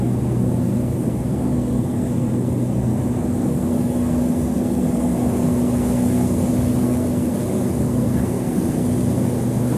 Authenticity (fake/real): fake